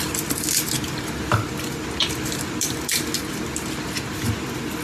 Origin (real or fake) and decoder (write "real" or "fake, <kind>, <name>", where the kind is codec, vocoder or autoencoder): real